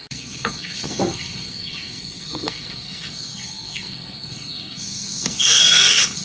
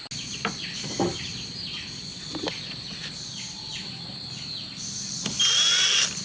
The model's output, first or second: first